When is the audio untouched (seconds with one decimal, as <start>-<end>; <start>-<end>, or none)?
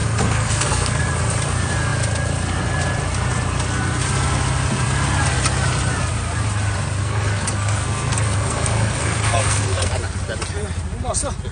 1.0-7.0; 9.9-11.5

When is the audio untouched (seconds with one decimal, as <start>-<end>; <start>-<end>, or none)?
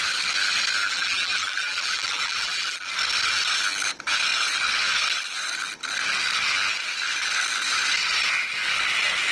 0.0-0.8; 2.9-9.3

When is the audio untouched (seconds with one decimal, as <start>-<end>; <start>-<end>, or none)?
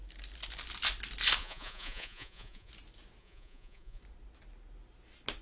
0.0-1.4; 2.7-3.2; 4.0-5.4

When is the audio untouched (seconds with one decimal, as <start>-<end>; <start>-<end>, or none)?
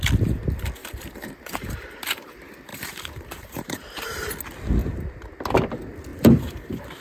0.0-0.8; 2.3-2.7; 4.3-6.1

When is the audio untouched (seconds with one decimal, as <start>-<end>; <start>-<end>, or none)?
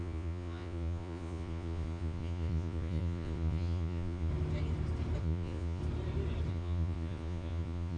4.3-5.2; 5.8-6.5